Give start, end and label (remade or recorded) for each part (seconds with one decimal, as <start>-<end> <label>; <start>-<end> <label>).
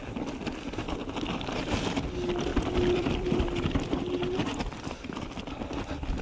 0.0-2.5 recorded; 2.5-3.4 remade; 3.4-4.5 recorded; 4.5-5.4 remade; 5.4-6.2 recorded